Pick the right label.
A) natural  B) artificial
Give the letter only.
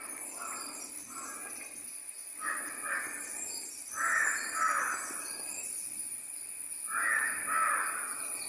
A